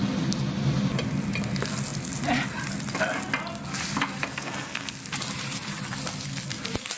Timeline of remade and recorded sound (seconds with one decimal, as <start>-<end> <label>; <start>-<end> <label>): 0.0-4.3 recorded; 4.3-4.9 remade; 4.9-7.0 recorded